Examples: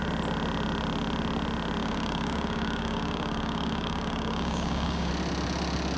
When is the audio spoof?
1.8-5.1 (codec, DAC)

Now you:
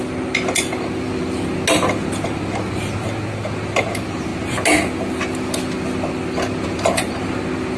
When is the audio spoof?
none

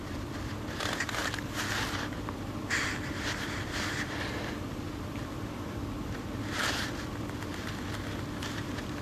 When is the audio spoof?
0.0-1.2 (vocoder, BigVGAN v2); 2.0-9.0

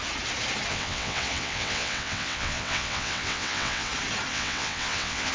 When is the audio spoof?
0.7-3.9 (vocoder, WaveNeXt); 4.3-5.3